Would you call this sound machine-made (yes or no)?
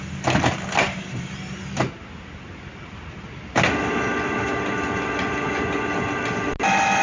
no